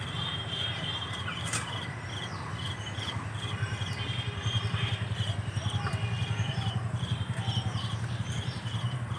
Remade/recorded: remade